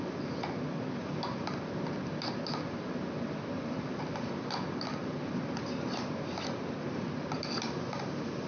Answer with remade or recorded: recorded